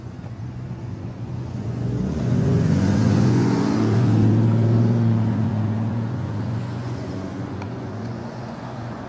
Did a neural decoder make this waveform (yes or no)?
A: yes